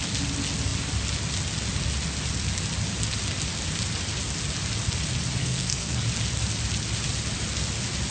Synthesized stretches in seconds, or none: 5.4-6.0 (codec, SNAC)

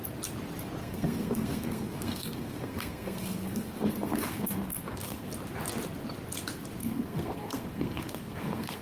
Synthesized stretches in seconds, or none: 0.8-5.3 (codec, SNAC); 6.8-8.8

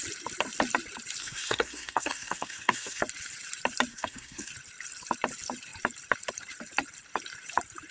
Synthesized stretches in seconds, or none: 1.2-3.0 (codec, SNAC); 3.9-4.5

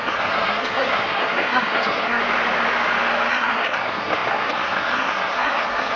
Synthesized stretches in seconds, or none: 0.0-2.2 (codec, SNAC); 3.3-6.0

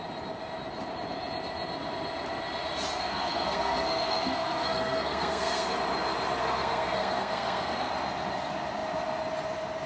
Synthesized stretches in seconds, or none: 3.0-5.7 (codec, SNAC); 6.4-7.9

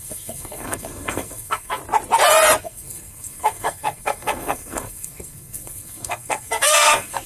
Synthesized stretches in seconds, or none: 0.0-1.8 (codec, SNAC); 2.6-7.3

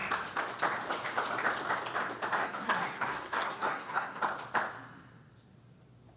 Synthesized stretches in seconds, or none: 2.4-4.2 (codec, SNAC)